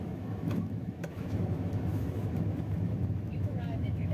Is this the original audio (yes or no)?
no